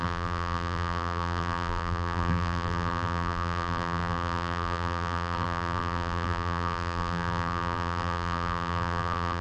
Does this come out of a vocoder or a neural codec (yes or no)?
yes